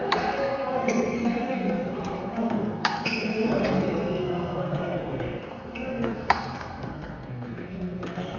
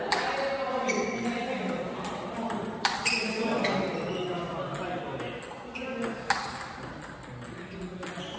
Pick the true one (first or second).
second